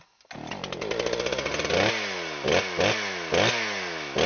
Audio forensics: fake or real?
real